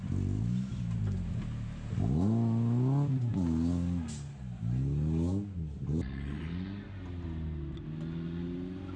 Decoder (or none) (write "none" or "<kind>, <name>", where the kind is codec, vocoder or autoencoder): none